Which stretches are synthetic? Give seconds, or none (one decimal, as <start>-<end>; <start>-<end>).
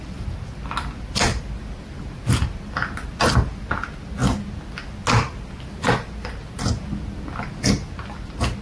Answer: none